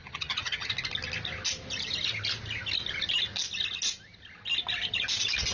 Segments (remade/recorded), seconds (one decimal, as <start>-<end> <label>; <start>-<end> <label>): 0.0-0.7 remade; 0.7-5.5 recorded